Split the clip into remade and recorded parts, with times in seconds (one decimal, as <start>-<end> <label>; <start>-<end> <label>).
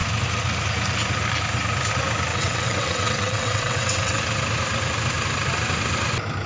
0.0-2.3 recorded; 2.3-4.2 remade; 4.2-6.5 recorded